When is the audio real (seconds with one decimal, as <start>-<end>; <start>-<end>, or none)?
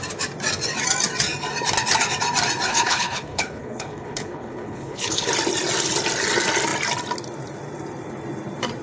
0.0-2.7; 5.3-8.8